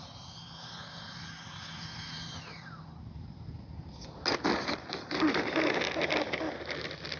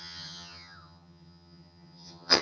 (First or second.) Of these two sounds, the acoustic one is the first